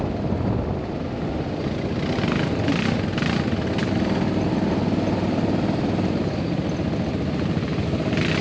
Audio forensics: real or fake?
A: real